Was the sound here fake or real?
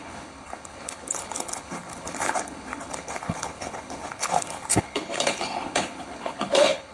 fake